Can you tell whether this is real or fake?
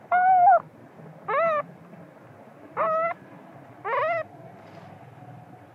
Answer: real